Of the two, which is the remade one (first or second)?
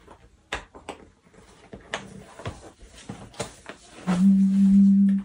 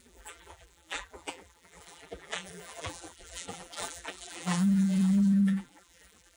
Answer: second